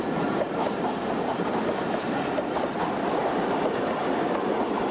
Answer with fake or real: real